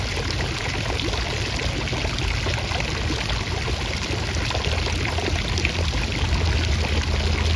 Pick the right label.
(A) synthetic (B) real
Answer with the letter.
B